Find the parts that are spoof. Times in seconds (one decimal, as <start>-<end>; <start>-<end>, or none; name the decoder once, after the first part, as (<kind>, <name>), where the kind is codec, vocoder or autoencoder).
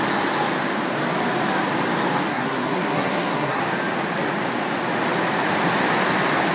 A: 2.3-3.6 (codec, SNAC)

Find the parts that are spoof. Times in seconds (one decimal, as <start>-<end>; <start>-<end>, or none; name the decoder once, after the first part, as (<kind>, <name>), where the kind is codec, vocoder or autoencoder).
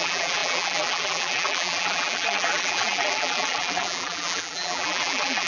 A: 0.0-5.5 (vocoder, BigVGAN v2)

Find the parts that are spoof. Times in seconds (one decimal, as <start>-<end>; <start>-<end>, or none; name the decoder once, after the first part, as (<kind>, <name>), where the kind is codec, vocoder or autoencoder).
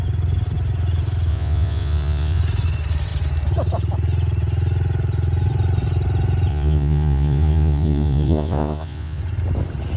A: 1.3-2.4 (vocoder, Vocos); 6.5-9.2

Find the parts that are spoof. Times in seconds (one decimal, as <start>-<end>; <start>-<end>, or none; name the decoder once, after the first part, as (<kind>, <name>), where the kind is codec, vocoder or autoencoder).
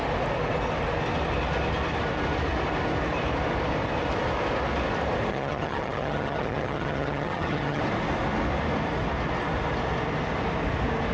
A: 5.3-7.8 (vocoder, HiFi-GAN)